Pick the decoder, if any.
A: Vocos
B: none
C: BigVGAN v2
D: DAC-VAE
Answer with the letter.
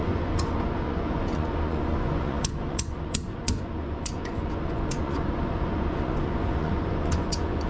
A